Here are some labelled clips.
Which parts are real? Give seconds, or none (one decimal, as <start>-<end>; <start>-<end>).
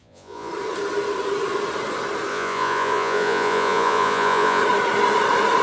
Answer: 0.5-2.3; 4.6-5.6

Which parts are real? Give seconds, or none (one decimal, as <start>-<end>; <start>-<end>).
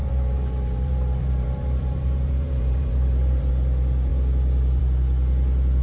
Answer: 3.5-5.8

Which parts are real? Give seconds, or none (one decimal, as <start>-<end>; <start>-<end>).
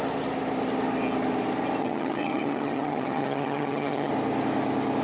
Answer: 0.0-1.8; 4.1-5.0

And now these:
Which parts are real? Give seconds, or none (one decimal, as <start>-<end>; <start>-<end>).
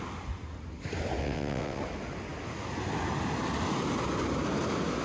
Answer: 0.0-1.2; 1.8-5.0